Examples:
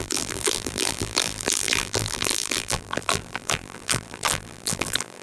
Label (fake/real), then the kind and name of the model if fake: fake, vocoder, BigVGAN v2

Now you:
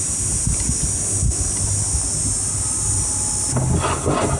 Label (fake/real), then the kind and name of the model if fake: real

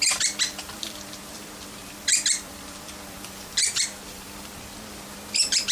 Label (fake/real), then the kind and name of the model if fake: fake, vocoder, BigVGAN v2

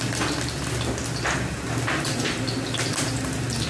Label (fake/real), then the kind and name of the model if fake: real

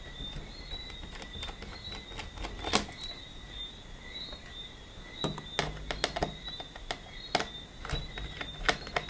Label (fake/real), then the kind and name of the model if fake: real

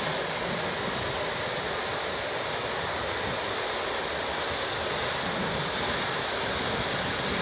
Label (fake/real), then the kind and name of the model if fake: real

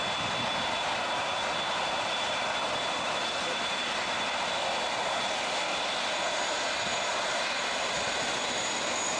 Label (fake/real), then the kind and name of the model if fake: real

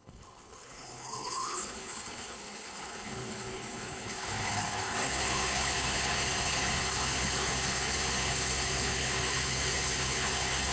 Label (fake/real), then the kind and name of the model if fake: fake, codec, HILCodec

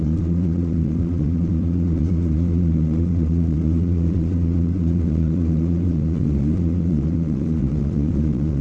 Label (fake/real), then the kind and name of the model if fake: fake, vocoder, Vocos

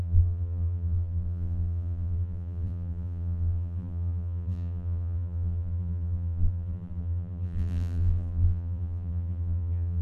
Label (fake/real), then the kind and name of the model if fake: fake, vocoder, BigVGAN v2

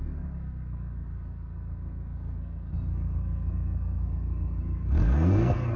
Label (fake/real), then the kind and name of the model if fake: fake, codec, SNAC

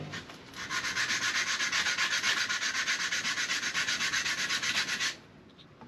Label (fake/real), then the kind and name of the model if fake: real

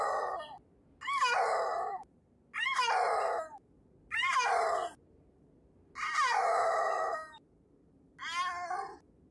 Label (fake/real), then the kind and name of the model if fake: real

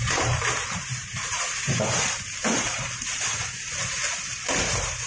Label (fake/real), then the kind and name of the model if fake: fake, vocoder, BigVGAN v2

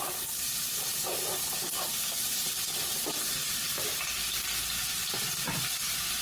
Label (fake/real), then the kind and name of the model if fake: fake, vocoder, BigVGAN v2